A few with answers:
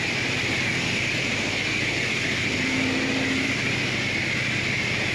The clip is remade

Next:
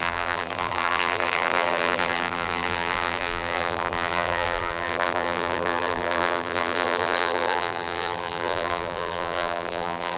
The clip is remade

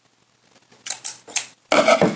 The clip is recorded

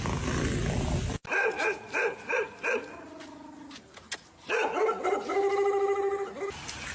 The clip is recorded